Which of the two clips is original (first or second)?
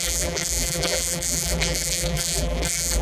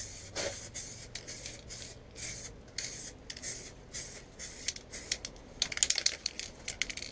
second